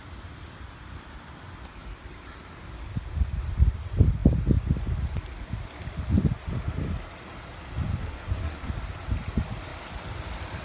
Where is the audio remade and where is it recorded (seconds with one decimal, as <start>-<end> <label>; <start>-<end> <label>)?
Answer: 0.0-8.0 recorded; 8.0-8.7 remade; 8.7-10.6 recorded